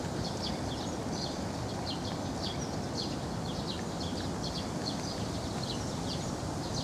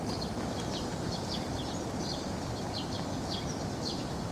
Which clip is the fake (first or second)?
second